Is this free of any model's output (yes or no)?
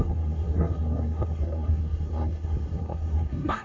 no